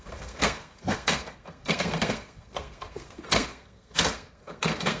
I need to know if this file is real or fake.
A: fake